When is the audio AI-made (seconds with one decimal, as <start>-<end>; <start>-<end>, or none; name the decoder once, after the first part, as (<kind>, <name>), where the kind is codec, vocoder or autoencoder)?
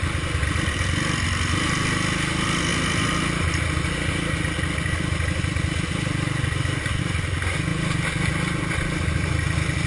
none